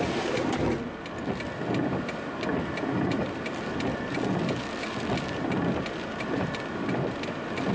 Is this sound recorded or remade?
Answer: recorded